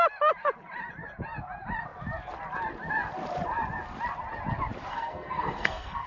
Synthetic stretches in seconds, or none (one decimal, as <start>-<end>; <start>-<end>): 4.9-6.1